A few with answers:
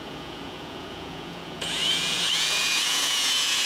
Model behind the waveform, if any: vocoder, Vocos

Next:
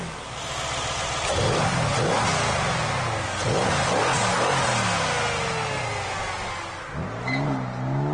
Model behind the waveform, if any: none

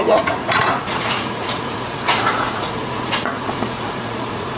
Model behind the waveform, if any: vocoder, Vocos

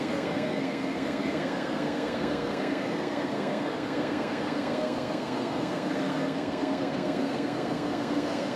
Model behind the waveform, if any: codec, SNAC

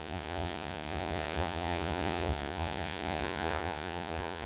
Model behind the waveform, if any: vocoder, Vocos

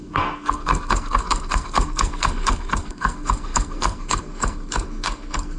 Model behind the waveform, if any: codec, SNAC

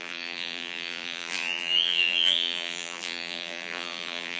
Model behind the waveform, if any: vocoder, BigVGAN v2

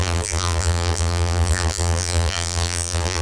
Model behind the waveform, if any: vocoder, BigVGAN v2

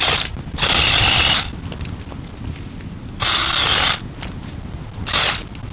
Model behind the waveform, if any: none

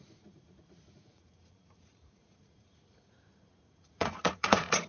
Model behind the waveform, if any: vocoder, Vocos